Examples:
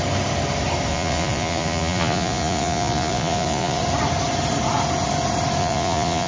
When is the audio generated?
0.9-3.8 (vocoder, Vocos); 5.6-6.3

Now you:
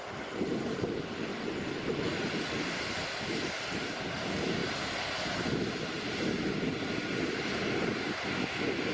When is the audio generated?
none

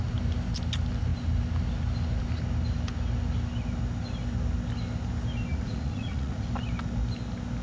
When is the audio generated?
5.5-6.5 (vocoder, Vocos)